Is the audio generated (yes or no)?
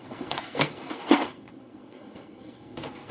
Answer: yes